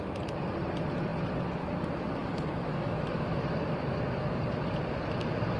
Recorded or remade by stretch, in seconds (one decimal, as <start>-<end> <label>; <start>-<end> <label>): 0.0-2.2 recorded; 2.2-3.4 remade; 3.4-5.6 recorded